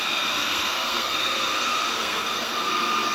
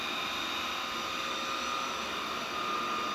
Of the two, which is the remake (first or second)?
first